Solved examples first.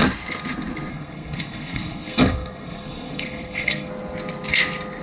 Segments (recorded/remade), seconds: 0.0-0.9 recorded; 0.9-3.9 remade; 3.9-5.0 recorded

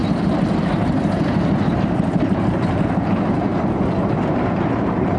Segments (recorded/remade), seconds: 0.0-3.5 remade; 3.5-4.0 recorded; 4.0-5.2 remade